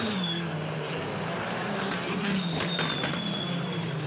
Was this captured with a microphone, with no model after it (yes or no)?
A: yes